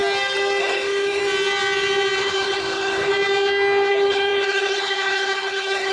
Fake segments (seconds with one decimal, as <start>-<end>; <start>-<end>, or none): 0.6-1.2; 2.2-3.1; 3.9-5.9